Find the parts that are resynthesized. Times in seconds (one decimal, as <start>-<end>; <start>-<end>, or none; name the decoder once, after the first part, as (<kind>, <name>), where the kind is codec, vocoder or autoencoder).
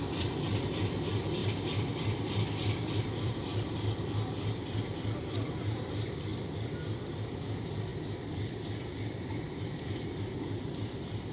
0.0-1.4 (vocoder, BigVGAN v2); 3.0-3.5; 4.3-6.3; 7.4-7.9; 9.8-11.3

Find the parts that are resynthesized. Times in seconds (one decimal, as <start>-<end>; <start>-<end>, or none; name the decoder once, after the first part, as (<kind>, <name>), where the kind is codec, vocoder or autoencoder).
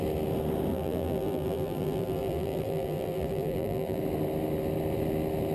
0.7-4.0 (vocoder, BigVGAN v2)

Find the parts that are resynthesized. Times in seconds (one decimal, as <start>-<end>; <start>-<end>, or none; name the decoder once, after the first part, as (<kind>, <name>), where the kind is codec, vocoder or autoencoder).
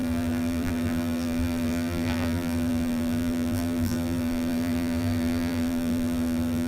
0.0-6.7 (vocoder, BigVGAN v2)